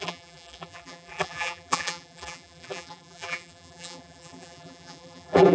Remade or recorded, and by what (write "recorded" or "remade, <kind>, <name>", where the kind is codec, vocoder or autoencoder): remade, vocoder, BigVGAN v2